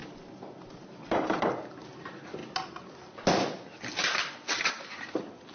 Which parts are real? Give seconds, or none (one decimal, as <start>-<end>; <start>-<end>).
1.5-5.5